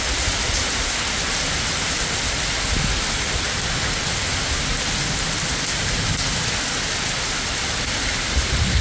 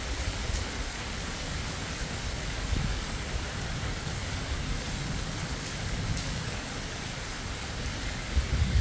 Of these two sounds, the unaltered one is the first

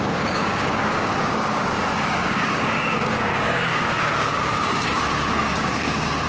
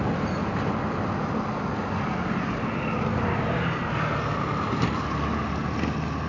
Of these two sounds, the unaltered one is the second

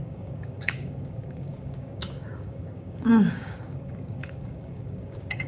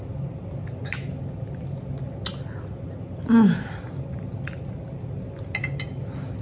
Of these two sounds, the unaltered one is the second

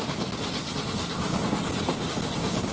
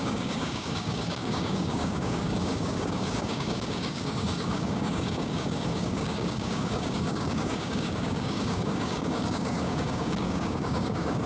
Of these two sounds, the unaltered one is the first